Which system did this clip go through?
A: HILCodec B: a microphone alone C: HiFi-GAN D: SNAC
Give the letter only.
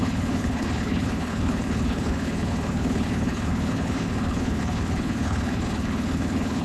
A